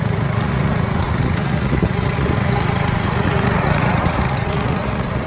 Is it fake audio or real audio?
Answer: fake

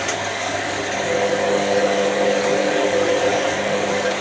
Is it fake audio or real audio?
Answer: fake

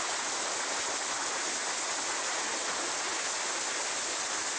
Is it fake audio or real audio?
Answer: real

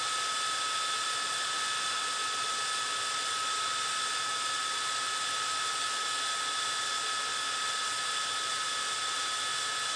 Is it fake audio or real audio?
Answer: real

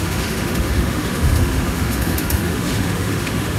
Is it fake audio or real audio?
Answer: fake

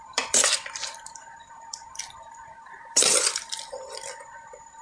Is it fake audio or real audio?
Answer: fake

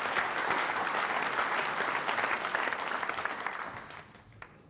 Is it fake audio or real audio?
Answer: real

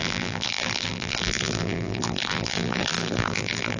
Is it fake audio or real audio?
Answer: fake